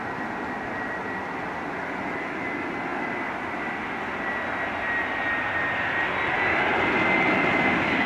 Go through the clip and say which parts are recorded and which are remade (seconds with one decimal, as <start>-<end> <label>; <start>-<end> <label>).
0.0-8.1 recorded